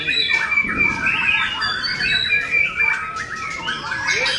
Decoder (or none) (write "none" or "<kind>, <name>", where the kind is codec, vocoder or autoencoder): none